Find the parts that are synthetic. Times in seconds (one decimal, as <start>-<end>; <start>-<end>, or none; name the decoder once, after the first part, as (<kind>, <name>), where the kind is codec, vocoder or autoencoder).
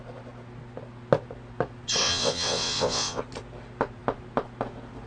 2.0-3.2 (vocoder, WaveNeXt)